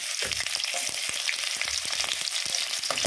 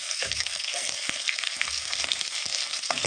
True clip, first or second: first